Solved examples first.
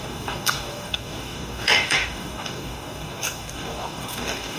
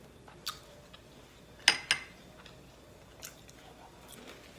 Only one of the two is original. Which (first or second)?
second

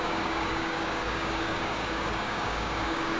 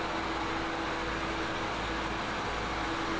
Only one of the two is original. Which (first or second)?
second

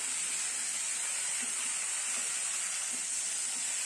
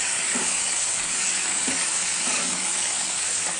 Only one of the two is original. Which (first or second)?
first